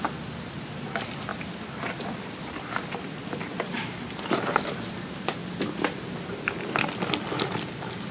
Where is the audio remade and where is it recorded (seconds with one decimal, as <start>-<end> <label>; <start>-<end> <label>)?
0.0-8.1 recorded